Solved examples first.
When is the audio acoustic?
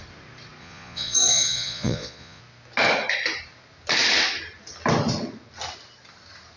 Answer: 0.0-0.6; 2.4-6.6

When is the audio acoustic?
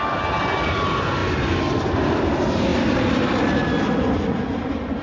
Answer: 0.0-5.0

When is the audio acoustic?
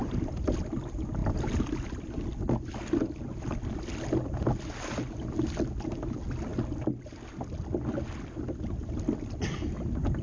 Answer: 0.7-1.2; 2.1-10.2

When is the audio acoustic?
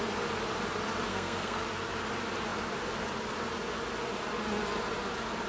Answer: 0.0-1.1; 1.6-5.5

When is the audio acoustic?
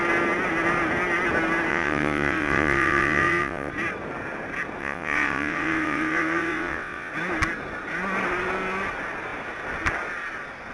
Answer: 0.0-1.7; 3.7-4.8; 7.1-10.7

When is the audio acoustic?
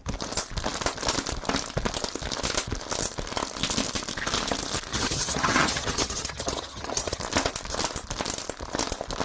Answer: 0.0-4.9; 7.2-9.2